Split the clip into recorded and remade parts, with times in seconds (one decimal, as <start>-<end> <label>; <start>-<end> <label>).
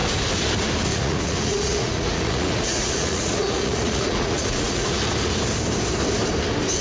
0.0-0.9 recorded; 0.9-5.0 remade; 5.0-6.8 recorded